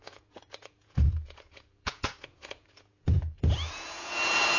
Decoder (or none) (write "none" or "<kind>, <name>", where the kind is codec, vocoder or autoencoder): vocoder, Vocos